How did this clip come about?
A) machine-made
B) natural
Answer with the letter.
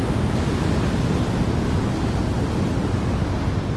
B